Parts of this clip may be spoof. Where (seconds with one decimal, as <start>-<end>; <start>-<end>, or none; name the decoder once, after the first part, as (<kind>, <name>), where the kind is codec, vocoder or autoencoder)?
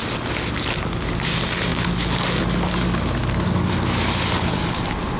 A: none